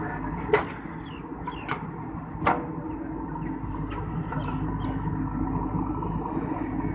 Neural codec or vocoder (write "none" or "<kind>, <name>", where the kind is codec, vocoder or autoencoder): none